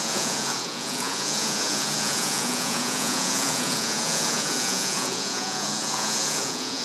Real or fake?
fake